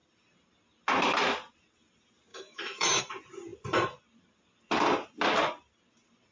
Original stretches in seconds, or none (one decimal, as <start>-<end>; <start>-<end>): 0.0-2.3; 3.0-6.3